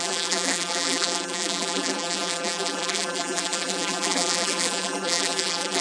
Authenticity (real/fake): fake